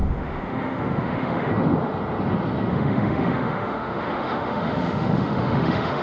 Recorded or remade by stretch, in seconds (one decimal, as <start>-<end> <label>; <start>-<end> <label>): 0.0-1.5 remade; 1.5-2.7 recorded; 2.7-6.0 remade